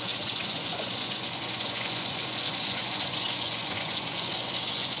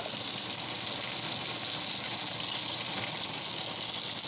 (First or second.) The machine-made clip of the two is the first